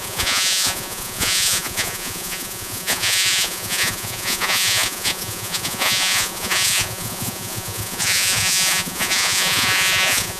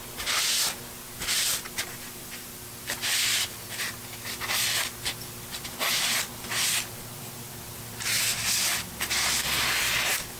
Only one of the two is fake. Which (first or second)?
first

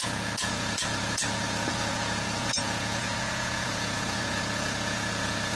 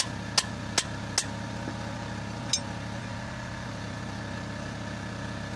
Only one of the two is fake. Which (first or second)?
first